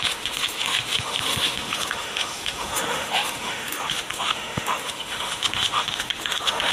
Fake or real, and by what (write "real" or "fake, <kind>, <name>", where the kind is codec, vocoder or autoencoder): fake, autoencoder, DAC-VAE